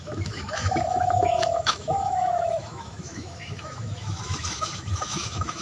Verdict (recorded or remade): remade